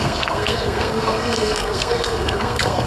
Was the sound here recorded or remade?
remade